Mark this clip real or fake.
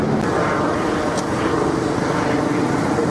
real